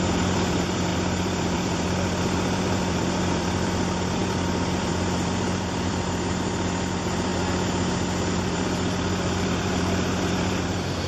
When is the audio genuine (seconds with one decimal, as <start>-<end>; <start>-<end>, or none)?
7.3-8.3